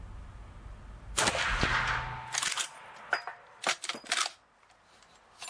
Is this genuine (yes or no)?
yes